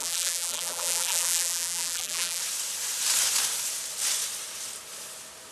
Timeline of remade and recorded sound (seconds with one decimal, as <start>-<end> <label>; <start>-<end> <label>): 0.0-2.4 remade; 2.4-5.5 recorded